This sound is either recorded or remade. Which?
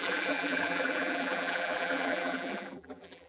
remade